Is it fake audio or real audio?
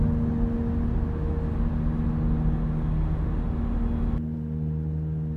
real